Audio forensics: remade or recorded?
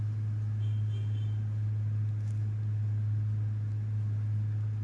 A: recorded